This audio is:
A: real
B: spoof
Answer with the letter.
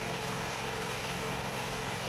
B